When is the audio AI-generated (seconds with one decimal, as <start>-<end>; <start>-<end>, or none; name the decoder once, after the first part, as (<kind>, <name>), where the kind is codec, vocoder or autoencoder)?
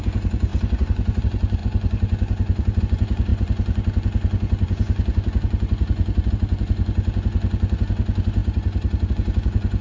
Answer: 0.0-8.4 (vocoder, Vocos); 9.1-9.8